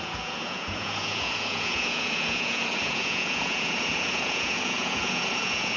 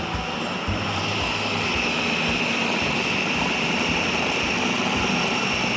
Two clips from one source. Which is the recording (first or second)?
second